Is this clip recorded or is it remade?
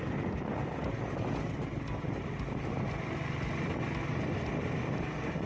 recorded